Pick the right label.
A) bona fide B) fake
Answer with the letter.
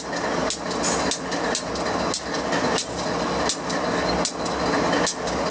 A